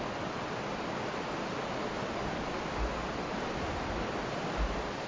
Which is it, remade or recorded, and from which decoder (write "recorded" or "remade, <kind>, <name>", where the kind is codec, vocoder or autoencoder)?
recorded